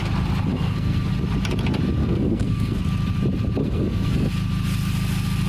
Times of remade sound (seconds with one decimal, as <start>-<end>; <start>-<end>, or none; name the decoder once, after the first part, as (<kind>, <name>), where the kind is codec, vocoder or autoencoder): 0.5-1.1 (codec, SNAC); 2.0-2.8; 3.6-4.3